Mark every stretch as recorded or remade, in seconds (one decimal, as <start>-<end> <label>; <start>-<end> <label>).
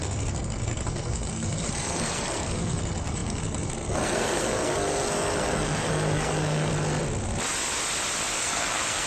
0.0-6.7 remade; 6.7-8.3 recorded; 8.3-9.1 remade